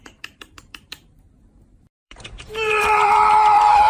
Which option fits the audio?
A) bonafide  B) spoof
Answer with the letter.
B